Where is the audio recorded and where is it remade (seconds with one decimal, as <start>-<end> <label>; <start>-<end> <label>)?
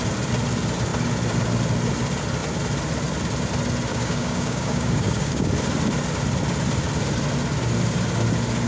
0.0-3.9 recorded; 3.9-5.5 remade; 5.5-8.7 recorded